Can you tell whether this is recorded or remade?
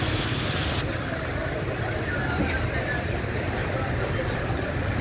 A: remade